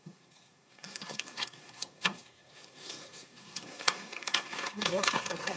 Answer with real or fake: fake